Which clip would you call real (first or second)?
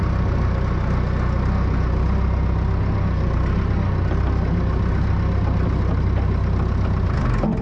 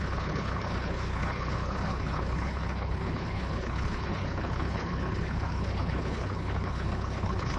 first